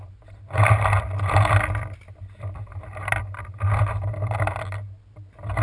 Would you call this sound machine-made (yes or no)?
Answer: no